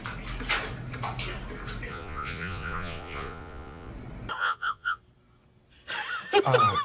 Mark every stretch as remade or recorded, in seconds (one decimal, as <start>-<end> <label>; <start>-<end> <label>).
0.0-1.9 recorded; 1.9-3.9 remade; 3.9-4.4 recorded; 4.4-5.0 remade; 5.0-6.8 recorded